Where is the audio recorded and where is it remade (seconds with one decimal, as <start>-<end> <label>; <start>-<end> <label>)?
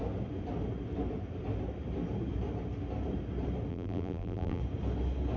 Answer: 0.0-3.7 recorded; 3.7-4.6 remade; 4.6-5.4 recorded